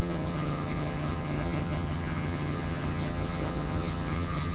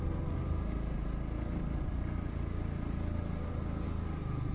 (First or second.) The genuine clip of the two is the second